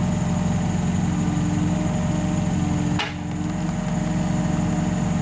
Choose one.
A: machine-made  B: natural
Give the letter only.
B